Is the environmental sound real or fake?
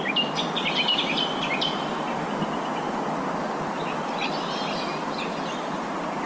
real